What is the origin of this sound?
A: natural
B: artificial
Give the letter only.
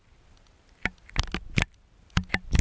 A